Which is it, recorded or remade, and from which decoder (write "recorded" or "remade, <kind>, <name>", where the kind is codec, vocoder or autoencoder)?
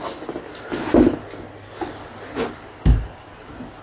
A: recorded